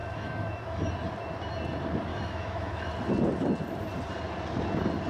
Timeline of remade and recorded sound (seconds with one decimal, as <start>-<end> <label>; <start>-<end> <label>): 0.0-0.9 remade; 0.9-2.1 recorded; 2.1-2.9 remade; 2.9-5.1 recorded